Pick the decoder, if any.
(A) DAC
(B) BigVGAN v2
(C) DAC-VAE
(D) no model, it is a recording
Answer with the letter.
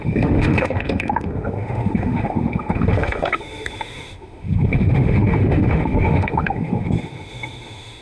C